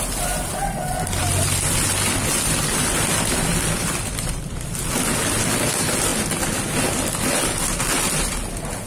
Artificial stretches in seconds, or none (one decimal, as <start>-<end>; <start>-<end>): 3.5-4.8